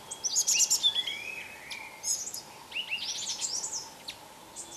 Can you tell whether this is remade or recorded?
recorded